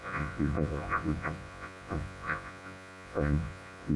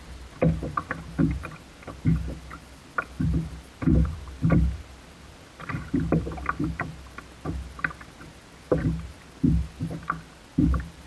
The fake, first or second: first